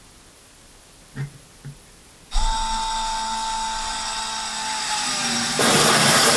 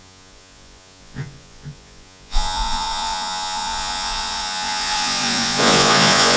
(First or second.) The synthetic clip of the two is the second